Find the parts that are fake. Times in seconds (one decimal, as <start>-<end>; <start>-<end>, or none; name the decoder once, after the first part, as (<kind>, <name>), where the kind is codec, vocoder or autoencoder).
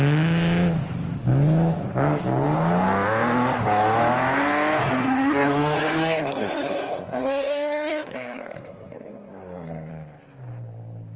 5.0-9.9 (codec, SNAC)